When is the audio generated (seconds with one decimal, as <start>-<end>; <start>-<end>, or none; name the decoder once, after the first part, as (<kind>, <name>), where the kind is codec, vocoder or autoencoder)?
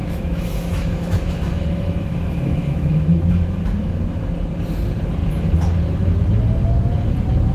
0.0-4.3 (autoencoder, DAC-VAE)